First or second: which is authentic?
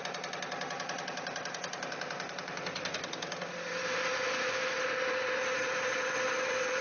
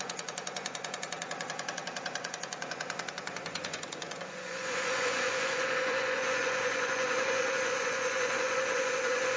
first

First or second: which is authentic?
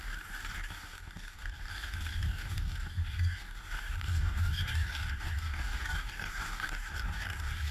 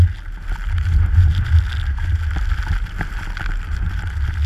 second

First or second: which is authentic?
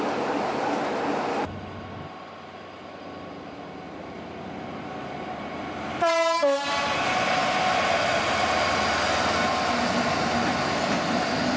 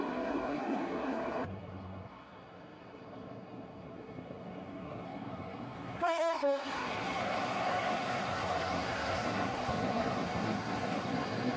first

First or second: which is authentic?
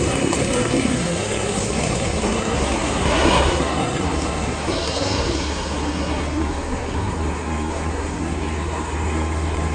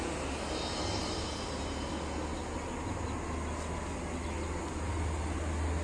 second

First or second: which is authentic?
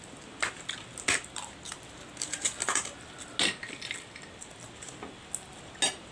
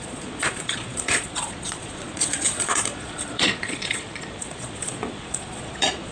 first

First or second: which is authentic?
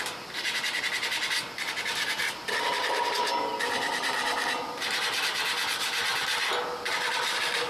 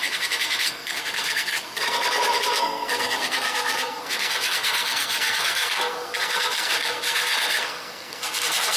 first